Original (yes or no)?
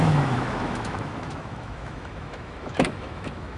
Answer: no